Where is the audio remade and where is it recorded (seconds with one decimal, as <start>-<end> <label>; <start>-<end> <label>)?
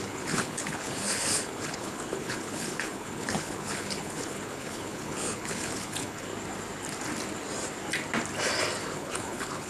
0.0-6.3 remade; 6.3-8.8 recorded; 8.8-9.7 remade